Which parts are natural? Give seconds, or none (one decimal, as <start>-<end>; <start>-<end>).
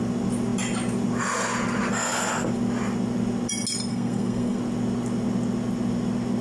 0.0-3.9; 4.6-6.4